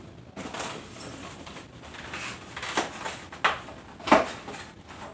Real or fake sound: real